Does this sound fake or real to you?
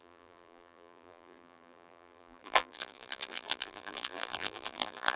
fake